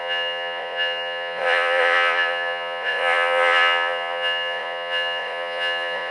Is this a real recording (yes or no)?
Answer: no